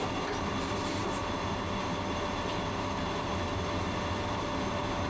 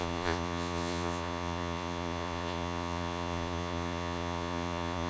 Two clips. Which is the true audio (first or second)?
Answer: first